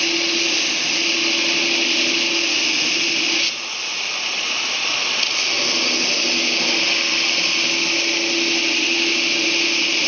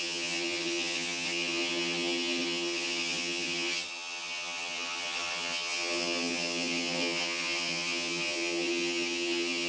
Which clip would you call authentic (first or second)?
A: first